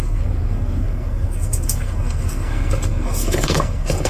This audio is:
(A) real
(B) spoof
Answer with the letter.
B